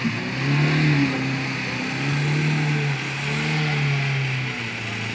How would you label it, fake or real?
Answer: real